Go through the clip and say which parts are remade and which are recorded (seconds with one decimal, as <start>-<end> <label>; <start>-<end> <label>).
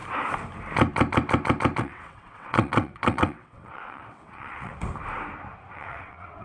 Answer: 0.0-1.8 recorded; 1.8-4.7 remade; 4.7-5.7 recorded; 5.7-6.4 remade